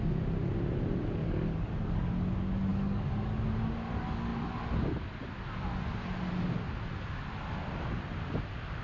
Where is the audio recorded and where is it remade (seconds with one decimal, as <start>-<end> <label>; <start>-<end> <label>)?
0.0-1.2 recorded; 1.2-2.1 remade; 2.1-2.7 recorded; 2.7-3.4 remade; 3.4-8.8 recorded